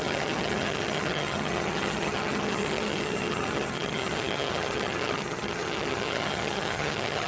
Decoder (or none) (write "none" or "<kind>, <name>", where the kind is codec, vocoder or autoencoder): vocoder, HiFi-GAN